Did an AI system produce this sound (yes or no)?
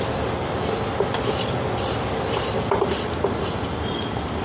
no